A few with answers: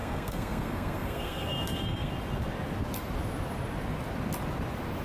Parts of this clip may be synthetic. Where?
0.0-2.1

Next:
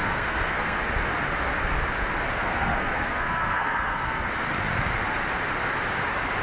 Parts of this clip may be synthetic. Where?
0.0-0.8; 2.3-4.3

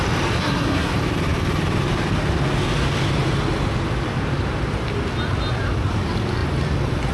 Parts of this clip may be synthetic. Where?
0.4-0.9

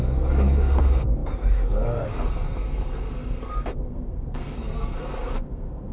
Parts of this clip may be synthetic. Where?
0.0-5.9

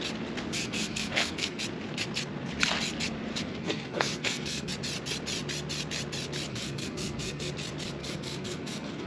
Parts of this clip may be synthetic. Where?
0.5-1.6; 3.3-4.7; 6.5-7.5; 8.0-9.1

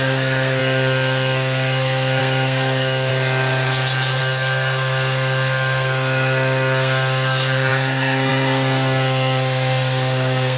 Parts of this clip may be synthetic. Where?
0.0-3.1; 4.2-10.6